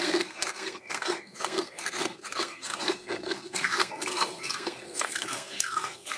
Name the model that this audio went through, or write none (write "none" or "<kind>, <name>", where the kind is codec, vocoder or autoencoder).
codec, SNAC